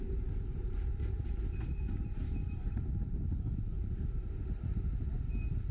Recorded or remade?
recorded